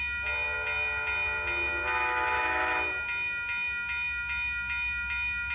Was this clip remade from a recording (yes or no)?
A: no